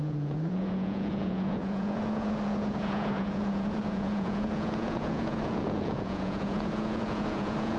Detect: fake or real fake